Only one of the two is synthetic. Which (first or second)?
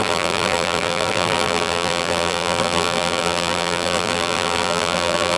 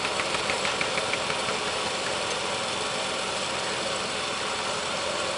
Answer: first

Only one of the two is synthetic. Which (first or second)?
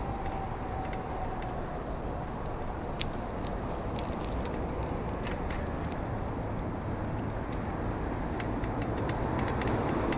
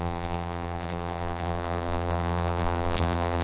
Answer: second